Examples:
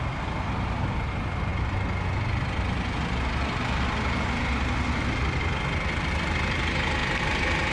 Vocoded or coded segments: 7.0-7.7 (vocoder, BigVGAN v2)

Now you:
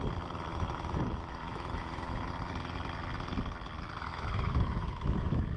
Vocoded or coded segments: 0.5-2.3 (autoencoder, DAC-VAE); 4.1-5.6

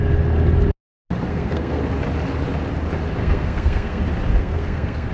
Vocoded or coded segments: 1.3-1.8 (codec, SNAC); 3.2-4.0; 4.4-5.1